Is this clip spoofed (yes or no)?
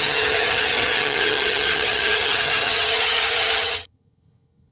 yes